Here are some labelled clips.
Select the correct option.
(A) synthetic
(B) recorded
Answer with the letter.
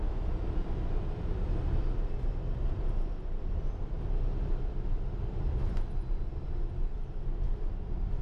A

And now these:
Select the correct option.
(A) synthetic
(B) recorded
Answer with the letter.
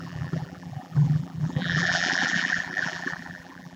A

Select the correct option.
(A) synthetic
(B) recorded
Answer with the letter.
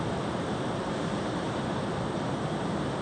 A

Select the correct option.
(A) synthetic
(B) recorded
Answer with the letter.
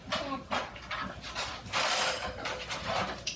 B